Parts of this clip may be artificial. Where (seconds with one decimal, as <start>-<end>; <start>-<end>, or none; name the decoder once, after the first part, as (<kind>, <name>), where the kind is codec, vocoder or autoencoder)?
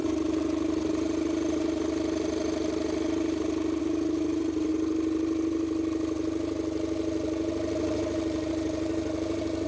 none